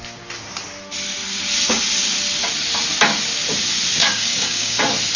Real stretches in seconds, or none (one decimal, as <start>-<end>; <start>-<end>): 0.0-4.0; 4.8-5.2